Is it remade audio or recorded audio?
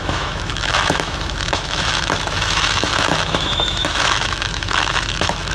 remade